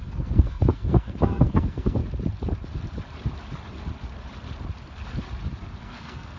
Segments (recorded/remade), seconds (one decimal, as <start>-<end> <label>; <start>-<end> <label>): 0.0-2.0 remade; 2.0-5.8 recorded; 5.8-6.4 remade